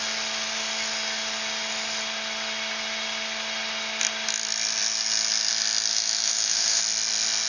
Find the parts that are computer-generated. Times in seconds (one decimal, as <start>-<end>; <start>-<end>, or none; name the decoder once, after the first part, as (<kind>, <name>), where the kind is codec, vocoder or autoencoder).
5.9-6.8 (autoencoder, DAC-VAE)